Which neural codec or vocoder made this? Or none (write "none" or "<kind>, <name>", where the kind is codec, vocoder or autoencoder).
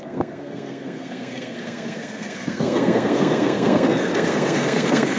codec, SNAC